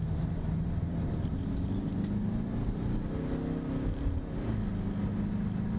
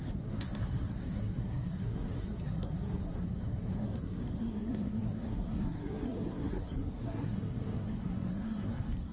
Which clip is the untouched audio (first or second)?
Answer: first